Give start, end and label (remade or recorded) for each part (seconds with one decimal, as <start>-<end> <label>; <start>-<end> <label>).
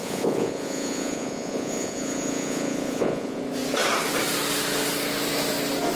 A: 0.0-3.4 remade; 3.4-6.0 recorded